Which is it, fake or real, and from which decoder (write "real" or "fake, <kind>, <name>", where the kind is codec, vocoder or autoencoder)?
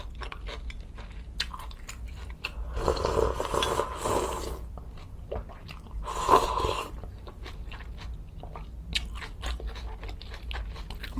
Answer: real